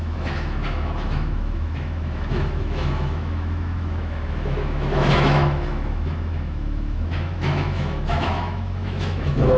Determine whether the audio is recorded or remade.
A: remade